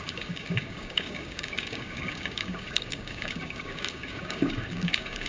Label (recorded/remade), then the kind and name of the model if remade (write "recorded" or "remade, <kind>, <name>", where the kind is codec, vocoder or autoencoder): remade, codec, DAC